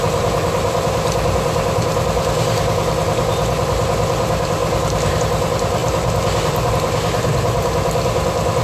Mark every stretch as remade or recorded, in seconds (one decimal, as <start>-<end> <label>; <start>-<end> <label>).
0.0-8.6 recorded